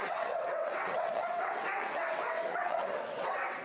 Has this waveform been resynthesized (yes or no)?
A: yes